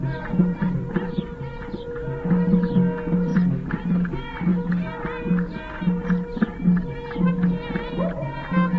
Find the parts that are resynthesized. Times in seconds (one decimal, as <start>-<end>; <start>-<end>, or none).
0.6-1.1